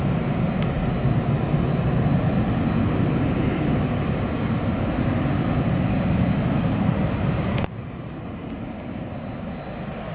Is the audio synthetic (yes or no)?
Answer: no